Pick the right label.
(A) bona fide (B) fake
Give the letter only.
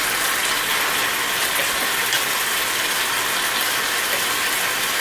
A